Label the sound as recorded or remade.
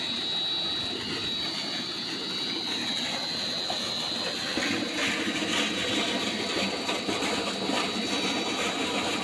recorded